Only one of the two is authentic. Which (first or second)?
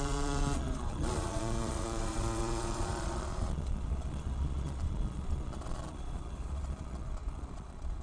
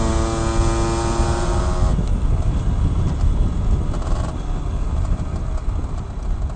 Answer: second